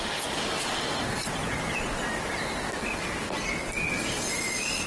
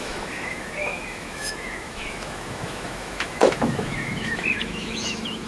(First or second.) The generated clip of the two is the second